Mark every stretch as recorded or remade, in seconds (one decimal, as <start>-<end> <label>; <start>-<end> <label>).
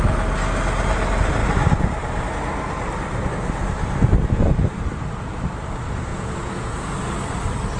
0.0-6.1 recorded; 6.1-6.9 remade; 6.9-7.8 recorded